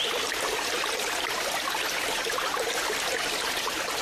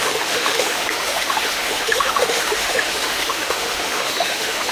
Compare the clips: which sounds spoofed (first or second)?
second